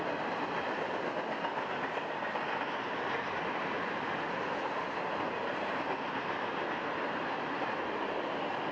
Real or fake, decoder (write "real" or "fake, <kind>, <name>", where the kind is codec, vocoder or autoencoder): real